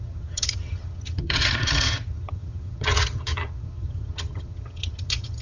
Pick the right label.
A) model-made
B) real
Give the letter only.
A